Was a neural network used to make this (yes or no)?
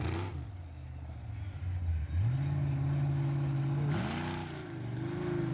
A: no